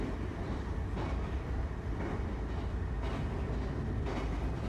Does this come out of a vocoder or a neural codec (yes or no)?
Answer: no